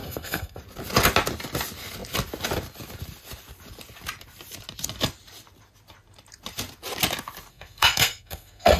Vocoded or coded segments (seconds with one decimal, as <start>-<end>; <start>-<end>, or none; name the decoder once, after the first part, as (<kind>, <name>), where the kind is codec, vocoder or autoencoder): 0.0-0.6 (codec, SNAC); 7.5-8.8